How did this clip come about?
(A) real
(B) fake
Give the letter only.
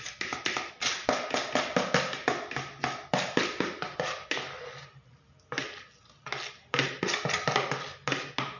A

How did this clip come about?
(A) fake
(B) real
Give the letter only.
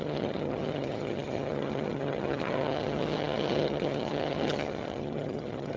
A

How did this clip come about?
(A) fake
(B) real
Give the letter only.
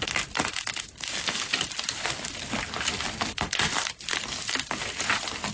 B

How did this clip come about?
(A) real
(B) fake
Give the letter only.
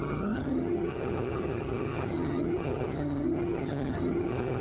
B